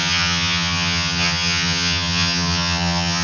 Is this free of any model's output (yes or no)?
no